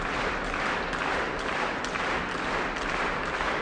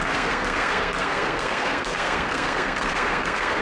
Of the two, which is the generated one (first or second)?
second